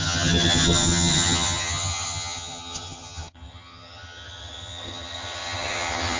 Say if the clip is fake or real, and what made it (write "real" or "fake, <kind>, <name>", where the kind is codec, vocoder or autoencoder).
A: fake, vocoder, HiFi-GAN